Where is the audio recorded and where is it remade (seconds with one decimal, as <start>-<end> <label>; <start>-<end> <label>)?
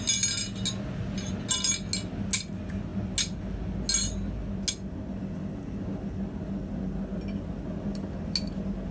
0.0-8.9 recorded